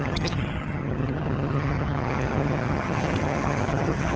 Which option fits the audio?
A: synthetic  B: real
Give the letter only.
A